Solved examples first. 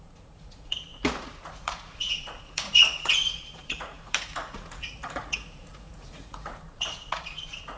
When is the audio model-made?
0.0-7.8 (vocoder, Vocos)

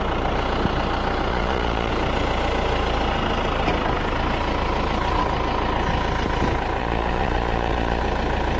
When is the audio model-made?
1.3-1.9 (vocoder, Vocos); 6.8-8.0

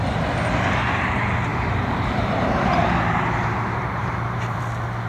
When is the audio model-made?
1.5-4.6 (vocoder, BigVGAN v2)